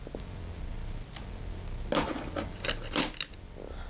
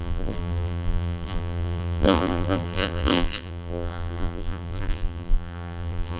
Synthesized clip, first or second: second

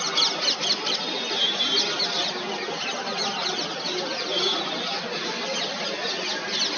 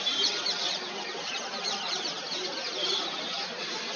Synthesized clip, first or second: second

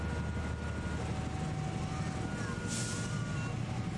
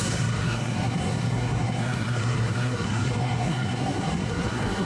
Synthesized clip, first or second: second